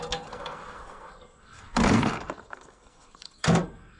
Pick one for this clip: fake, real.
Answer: fake